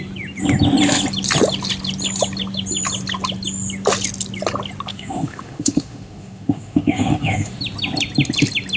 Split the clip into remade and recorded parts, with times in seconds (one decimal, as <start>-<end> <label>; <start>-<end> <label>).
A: 0.0-4.9 recorded; 4.9-7.6 remade; 7.6-8.8 recorded